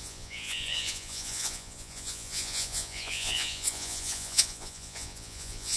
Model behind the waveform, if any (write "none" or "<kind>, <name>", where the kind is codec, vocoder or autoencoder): vocoder, Vocos